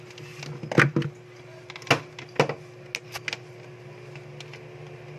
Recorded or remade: recorded